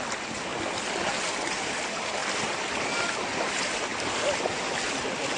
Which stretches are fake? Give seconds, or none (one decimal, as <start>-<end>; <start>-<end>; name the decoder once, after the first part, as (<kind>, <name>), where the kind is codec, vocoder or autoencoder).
none